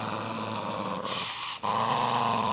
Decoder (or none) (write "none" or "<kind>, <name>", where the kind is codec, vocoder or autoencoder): vocoder, BigVGAN v2